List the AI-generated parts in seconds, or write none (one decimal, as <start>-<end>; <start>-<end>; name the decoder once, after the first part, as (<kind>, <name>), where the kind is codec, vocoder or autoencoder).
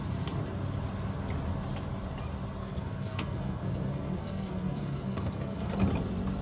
2.6-5.7 (codec, SNAC)